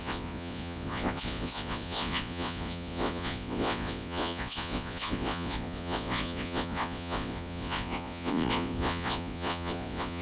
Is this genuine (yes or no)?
no